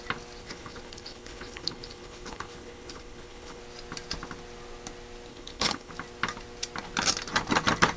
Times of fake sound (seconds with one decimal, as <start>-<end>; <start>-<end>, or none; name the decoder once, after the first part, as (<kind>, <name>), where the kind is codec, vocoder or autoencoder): 0.4-3.6 (codec, HILCodec); 5.3-5.9